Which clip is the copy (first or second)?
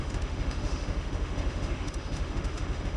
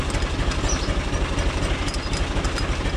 first